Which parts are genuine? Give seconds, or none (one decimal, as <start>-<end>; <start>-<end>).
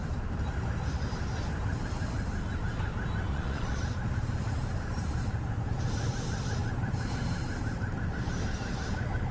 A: 0.0-3.3; 3.8-9.3